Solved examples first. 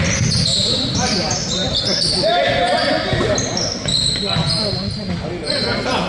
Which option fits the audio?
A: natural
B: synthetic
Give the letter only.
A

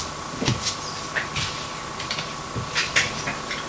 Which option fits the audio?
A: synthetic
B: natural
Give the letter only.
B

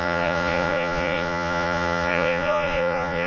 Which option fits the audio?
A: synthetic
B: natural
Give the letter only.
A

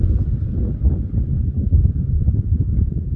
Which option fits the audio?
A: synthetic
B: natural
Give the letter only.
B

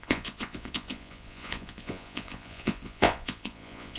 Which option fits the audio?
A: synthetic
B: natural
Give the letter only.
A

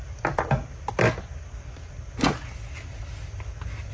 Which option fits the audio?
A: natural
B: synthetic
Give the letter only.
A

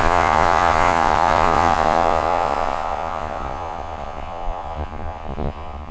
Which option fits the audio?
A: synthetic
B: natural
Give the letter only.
A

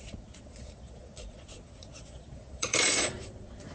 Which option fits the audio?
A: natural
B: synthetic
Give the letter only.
B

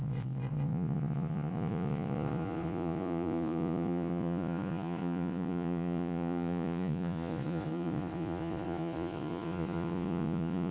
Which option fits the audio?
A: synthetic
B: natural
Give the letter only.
A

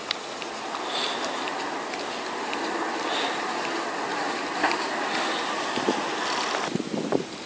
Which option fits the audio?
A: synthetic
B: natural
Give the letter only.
B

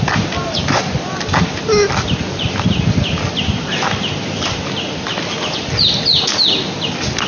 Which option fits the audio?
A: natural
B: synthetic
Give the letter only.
A